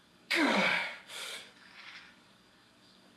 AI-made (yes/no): yes